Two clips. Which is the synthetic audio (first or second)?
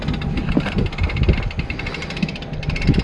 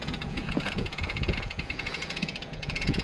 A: second